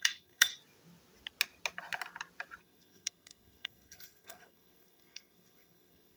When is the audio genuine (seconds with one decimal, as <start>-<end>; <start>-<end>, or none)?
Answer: 0.5-2.6